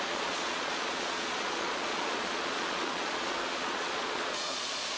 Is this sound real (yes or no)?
no